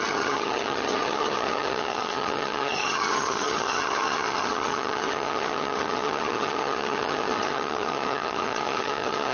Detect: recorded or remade remade